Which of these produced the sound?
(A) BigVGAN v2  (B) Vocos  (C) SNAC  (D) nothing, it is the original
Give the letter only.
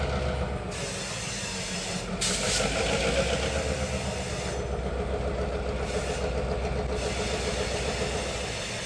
D